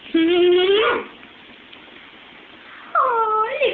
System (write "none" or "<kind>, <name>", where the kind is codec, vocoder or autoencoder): none